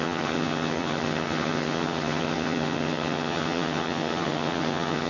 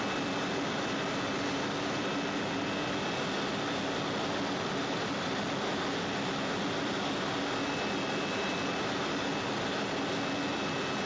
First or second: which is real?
second